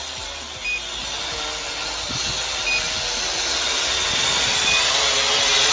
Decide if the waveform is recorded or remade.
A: recorded